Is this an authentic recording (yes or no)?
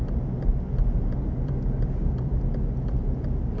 yes